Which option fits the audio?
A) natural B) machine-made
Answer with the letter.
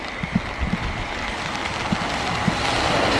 A